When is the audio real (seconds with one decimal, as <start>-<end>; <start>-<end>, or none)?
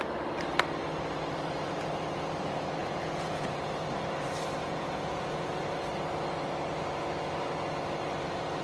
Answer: 0.0-2.8; 3.5-4.6; 5.6-8.6